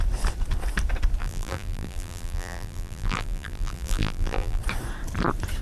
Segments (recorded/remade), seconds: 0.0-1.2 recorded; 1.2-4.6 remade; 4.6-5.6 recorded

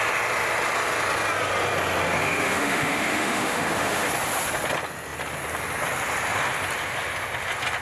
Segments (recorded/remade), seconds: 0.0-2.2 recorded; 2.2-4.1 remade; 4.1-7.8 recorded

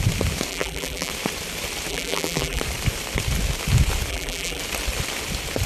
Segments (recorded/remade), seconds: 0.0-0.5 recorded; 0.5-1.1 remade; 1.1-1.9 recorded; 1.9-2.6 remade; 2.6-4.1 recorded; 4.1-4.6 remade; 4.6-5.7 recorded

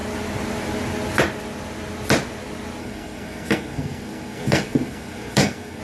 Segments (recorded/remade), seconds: 0.0-2.8 recorded; 2.8-5.8 remade

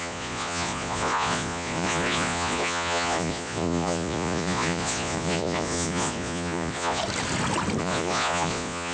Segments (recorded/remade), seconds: 0.0-7.0 remade; 7.0-7.8 recorded; 7.8-8.9 remade

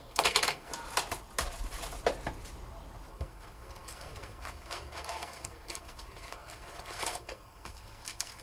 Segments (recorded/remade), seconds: 0.0-0.7 remade; 0.7-3.1 recorded; 3.1-8.4 remade

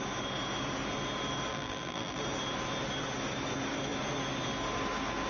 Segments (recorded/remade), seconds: 0.0-1.5 recorded; 1.5-2.2 remade; 2.2-5.3 recorded

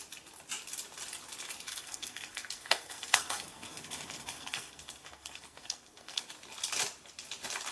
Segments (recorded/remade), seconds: 0.0-1.7 recorded; 1.7-6.3 remade; 6.3-7.7 recorded